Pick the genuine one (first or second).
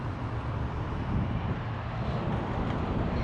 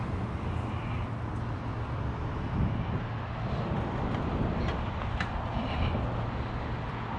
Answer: second